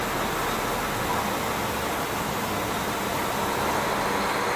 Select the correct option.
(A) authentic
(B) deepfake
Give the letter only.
A